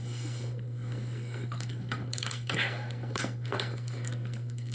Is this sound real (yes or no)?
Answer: no